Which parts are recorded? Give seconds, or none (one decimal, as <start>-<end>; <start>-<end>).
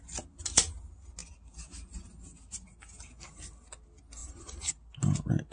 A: 0.0-4.2; 4.7-5.5